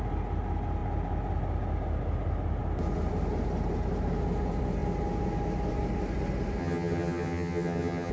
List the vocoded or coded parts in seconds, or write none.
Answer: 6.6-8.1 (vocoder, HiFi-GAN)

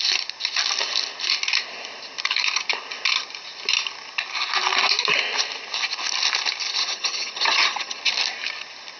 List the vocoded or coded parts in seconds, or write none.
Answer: 6.8-8.0 (vocoder, HiFi-GAN)

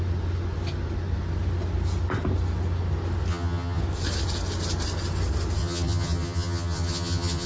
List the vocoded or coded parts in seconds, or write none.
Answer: 3.3-3.8 (vocoder, HiFi-GAN); 5.6-7.5